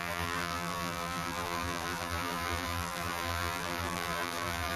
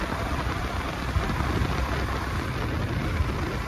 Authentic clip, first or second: second